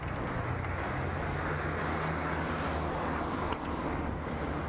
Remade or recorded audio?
recorded